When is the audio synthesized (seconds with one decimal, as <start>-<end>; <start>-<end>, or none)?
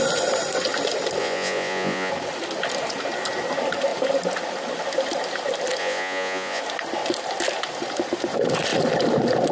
1.2-2.1; 5.8-6.6